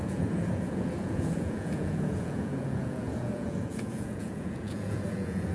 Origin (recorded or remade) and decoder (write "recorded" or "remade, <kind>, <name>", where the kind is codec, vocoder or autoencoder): remade, vocoder, Vocos